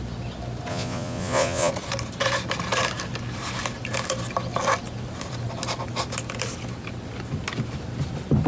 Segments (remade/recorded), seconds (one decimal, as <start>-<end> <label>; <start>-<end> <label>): 0.0-0.7 recorded; 0.7-1.7 remade; 1.7-8.5 recorded